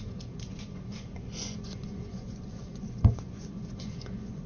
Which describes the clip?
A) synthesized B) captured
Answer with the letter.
A